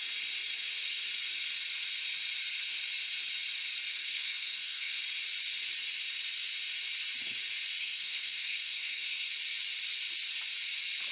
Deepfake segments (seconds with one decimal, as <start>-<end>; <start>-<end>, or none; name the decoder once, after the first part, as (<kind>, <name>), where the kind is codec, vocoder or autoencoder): 3.9-5.0 (codec, SNAC); 7.8-9.3